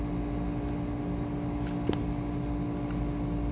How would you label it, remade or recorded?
recorded